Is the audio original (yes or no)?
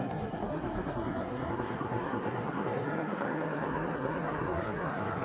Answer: no